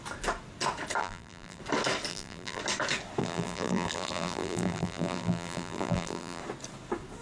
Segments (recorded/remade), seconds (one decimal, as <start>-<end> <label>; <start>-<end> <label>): 0.0-1.0 recorded; 1.0-1.6 remade; 1.6-2.1 recorded; 2.1-2.6 remade; 2.6-3.2 recorded; 3.2-6.4 remade; 6.4-7.2 recorded